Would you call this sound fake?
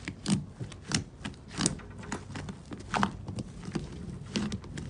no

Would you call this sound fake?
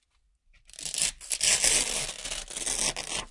no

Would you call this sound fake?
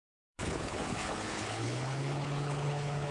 yes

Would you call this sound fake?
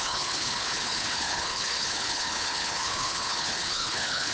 yes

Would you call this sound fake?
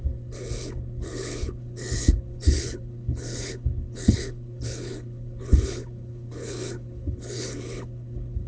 yes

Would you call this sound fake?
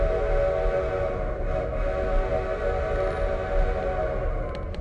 no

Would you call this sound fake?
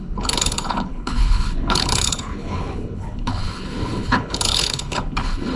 yes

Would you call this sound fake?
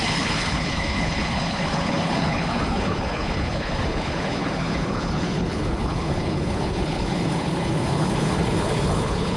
yes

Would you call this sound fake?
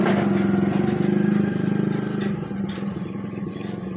no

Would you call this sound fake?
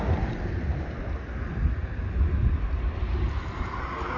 no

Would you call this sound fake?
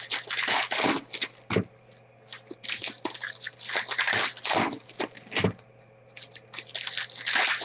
no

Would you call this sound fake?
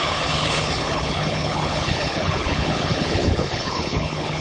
yes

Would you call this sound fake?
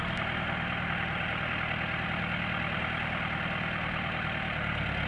no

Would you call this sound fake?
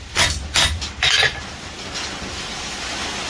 no